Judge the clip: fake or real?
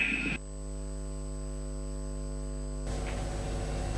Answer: real